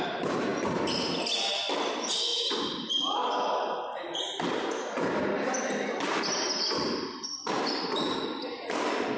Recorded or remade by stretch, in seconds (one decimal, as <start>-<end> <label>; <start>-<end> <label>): 0.0-9.2 recorded